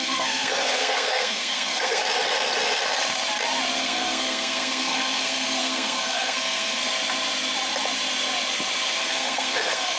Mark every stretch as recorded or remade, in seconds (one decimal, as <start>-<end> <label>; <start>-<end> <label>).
0.0-2.0 remade; 2.0-3.8 recorded; 3.8-6.8 remade; 6.8-9.0 recorded; 9.0-10.0 remade